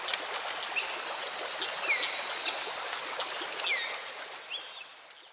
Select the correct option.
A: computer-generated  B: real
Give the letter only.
B